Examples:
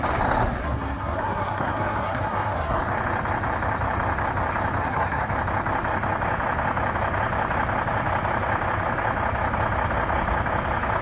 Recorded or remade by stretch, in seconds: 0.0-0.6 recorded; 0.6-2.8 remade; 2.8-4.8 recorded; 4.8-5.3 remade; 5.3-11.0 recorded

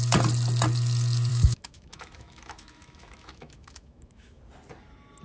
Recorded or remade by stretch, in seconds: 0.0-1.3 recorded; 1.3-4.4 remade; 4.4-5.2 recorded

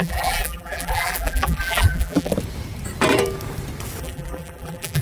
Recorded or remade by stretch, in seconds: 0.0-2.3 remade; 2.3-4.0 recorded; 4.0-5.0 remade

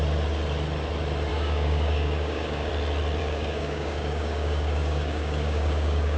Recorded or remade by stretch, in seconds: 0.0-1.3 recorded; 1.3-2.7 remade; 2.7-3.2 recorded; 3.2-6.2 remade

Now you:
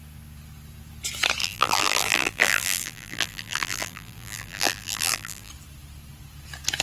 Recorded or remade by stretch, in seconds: 0.0-1.4 recorded; 1.4-5.5 remade; 5.5-6.8 recorded